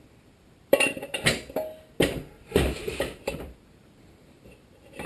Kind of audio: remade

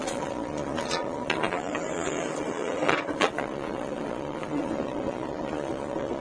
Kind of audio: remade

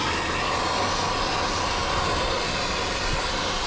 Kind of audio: recorded